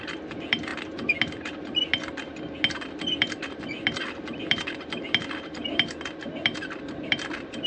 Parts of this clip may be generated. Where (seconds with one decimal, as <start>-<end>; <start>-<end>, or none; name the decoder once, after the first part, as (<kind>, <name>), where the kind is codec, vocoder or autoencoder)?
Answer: 0.0-0.7 (vocoder, BigVGAN v2); 2.7-7.7